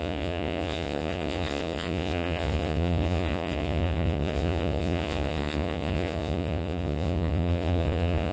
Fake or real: fake